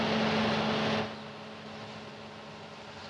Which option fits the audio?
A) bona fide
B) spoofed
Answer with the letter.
A